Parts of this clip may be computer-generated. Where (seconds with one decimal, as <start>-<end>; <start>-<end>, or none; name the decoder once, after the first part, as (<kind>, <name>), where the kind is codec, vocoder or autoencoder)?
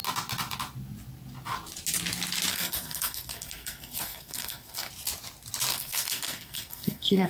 2.5-4.9 (codec, SNAC); 5.7-7.3